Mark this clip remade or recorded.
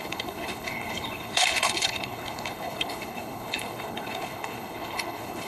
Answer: remade